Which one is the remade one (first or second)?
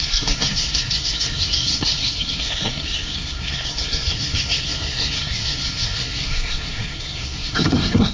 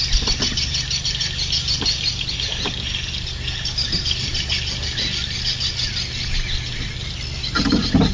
first